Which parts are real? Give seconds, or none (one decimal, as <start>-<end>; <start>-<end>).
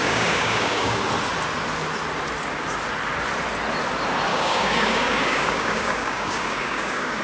1.0-4.3